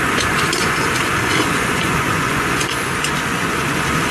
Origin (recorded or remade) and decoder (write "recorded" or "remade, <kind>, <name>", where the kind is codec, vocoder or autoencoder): remade, vocoder, Vocos